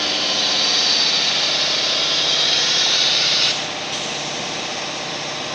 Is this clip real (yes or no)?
yes